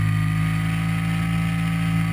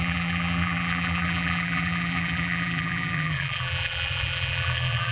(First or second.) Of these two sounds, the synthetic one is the second